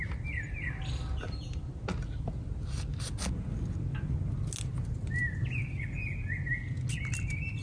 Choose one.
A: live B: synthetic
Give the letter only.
A